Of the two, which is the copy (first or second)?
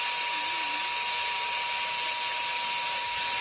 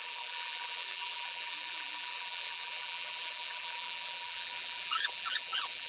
second